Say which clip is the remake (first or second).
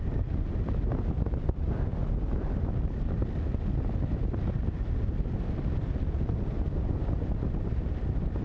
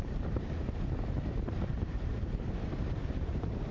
second